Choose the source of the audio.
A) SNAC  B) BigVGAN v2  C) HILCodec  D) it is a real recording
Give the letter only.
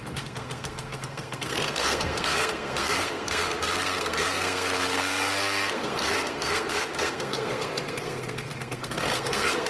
A